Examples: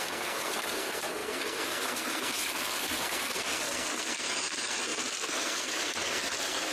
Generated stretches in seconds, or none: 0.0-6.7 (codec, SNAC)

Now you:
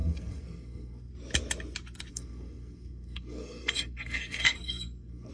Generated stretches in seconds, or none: 0.0-1.1 (codec, SNAC); 2.1-5.3

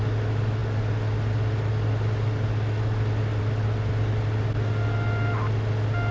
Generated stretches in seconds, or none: none

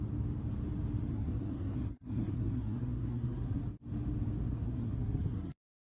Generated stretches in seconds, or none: 1.1-3.6 (codec, SNAC); 4.5-5.9

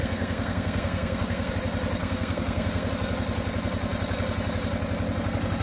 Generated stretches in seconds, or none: 0.0-1.5 (codec, SNAC); 2.0-2.9

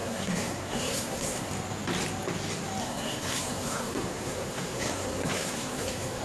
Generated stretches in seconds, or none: 0.0-1.5 (codec, SNAC); 2.8-6.2

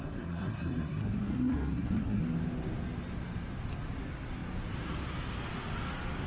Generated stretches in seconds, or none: 0.0-2.2 (codec, SNAC)

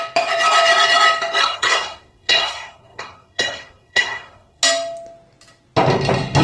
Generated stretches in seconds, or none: 1.4-4.6 (codec, SNAC)